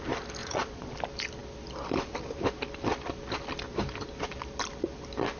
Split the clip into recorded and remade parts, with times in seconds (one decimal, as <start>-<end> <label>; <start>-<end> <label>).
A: 0.0-0.4 recorded; 0.4-0.9 remade; 0.9-5.4 recorded